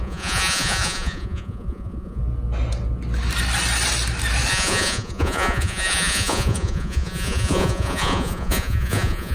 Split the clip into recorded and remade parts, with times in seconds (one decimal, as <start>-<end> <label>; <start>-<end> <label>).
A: 0.0-2.2 remade; 2.2-4.5 recorded; 4.5-9.3 remade